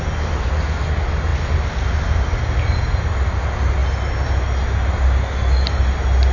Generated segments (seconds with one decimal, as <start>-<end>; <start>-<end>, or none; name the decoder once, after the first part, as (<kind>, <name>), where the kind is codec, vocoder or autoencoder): none